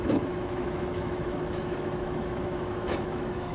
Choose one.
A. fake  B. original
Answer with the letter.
A